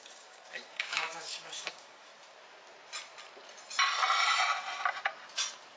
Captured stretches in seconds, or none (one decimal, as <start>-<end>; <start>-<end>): 2.1-5.8

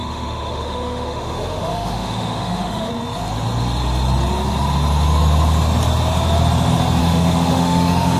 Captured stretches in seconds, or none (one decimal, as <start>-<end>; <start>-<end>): 2.9-7.0

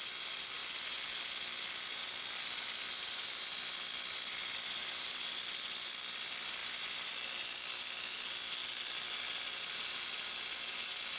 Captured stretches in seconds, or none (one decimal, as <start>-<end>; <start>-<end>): 0.0-11.2

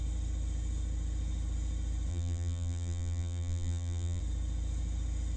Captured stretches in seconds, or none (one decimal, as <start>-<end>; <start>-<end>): 0.0-2.1; 4.2-5.4

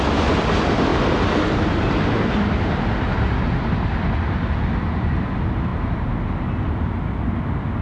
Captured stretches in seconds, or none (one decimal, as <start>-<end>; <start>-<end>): 0.0-7.8

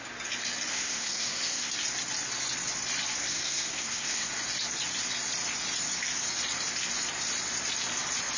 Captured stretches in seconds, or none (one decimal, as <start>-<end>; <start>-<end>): 0.0-0.7; 1.7-3.2; 4.3-8.4

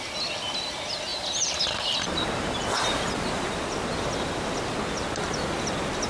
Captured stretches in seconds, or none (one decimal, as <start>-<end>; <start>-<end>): 0.0-1.1; 2.8-6.1

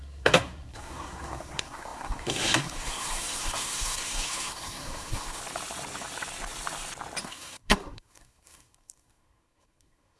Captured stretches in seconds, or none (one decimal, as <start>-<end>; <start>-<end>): 5.4-7.2